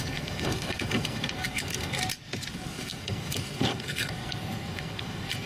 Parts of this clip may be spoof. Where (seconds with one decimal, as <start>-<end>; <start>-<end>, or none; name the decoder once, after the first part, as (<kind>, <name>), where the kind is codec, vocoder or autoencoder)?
0.0-2.0 (codec, SNAC); 2.5-5.5